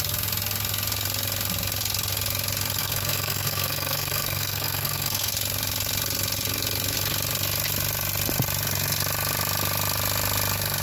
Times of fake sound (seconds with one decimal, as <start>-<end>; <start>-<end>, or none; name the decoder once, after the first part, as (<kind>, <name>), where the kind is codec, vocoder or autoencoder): 2.8-5.3 (codec, SNAC)